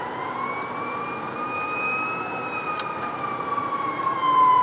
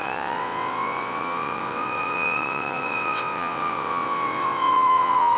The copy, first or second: second